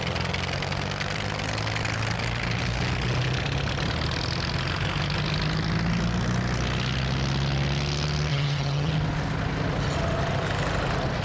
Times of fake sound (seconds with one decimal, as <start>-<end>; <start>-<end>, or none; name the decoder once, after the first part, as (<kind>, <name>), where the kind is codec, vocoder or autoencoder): 8.3-8.9 (vocoder, HiFi-GAN)